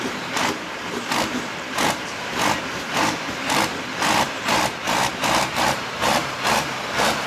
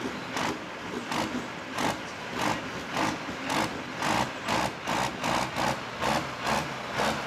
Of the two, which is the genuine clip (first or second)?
second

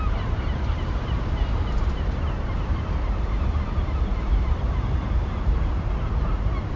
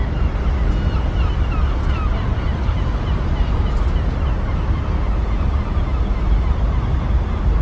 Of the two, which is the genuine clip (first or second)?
second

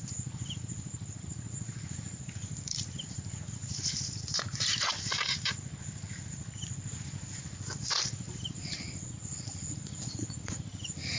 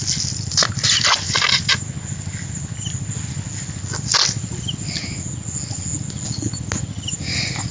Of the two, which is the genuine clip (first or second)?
second